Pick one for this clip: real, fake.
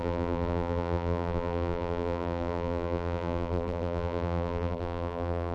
fake